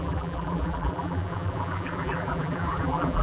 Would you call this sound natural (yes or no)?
no